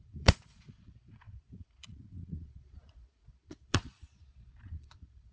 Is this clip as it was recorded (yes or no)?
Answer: no